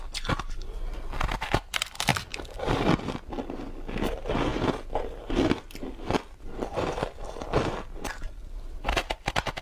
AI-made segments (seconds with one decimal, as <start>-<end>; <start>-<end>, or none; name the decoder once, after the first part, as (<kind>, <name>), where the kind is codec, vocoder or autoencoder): none